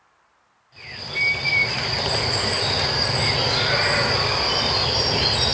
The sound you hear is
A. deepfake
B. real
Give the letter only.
B